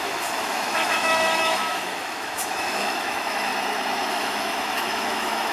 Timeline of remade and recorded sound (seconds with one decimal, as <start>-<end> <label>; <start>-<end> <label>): 0.0-3.5 remade; 3.5-4.1 recorded; 4.1-5.5 remade